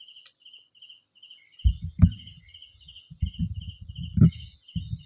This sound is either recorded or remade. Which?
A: recorded